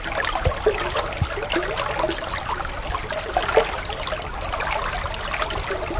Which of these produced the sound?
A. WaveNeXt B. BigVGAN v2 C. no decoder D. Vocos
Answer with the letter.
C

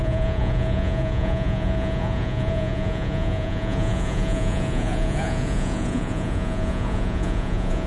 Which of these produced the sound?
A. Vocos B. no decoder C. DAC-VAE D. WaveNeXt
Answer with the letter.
A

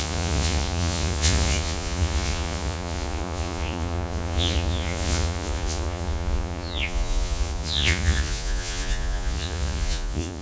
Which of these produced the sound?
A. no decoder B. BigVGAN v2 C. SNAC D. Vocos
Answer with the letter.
D